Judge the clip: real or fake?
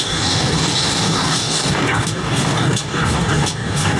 fake